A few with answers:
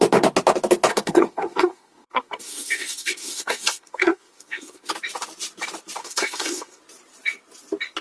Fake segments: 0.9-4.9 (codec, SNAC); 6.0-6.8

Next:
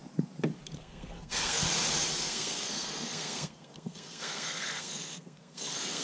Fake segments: 0.8-1.6 (codec, SNAC); 2.2-6.0

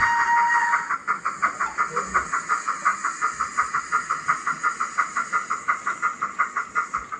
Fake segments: none

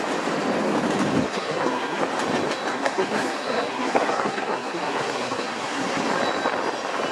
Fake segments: 1.3-2.0 (codec, SNAC); 2.7-6.1

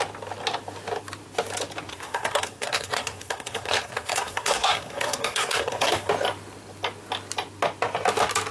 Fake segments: 1.9-6.1 (codec, SNAC)

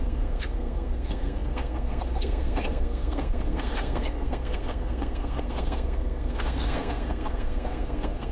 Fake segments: 0.0-8.3 (codec, SNAC)

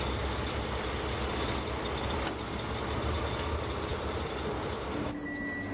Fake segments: none